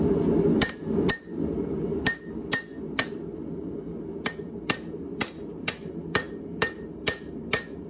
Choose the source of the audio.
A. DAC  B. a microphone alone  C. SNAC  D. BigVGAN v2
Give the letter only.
D